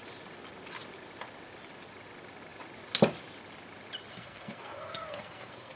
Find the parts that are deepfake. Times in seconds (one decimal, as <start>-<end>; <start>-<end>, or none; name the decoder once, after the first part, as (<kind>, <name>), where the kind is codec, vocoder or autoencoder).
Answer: 4.1-5.8 (codec, SNAC)

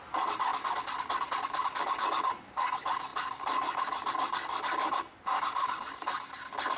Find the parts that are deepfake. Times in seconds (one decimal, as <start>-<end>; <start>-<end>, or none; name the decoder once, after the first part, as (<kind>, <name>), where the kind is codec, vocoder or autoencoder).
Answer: none